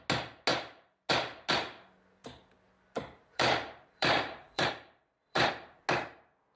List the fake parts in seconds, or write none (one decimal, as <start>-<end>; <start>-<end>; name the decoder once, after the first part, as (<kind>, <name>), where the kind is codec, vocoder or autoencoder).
2.2-5.5 (vocoder, BigVGAN v2)